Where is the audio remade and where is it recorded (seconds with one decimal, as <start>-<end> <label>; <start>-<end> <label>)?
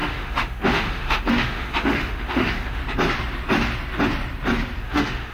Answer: 0.0-2.8 remade; 2.8-4.8 recorded; 4.8-5.3 remade